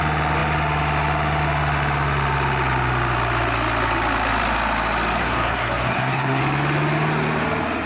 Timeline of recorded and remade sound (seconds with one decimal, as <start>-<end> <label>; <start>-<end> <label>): 0.0-5.2 recorded; 5.2-6.4 remade; 6.4-7.9 recorded